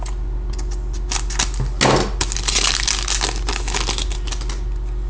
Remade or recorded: recorded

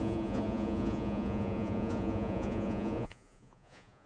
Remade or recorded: remade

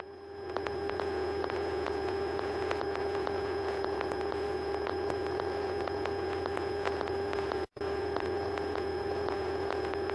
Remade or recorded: remade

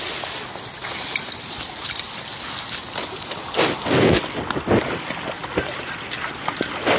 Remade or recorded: recorded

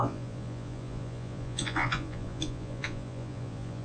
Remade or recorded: remade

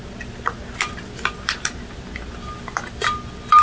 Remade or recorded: recorded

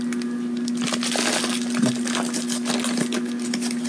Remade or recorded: recorded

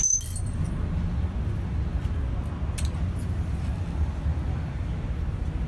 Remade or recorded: recorded